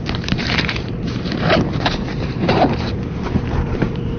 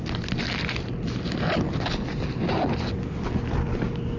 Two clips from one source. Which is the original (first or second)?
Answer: second